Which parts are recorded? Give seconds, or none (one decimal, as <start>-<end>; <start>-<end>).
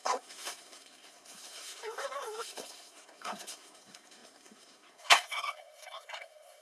none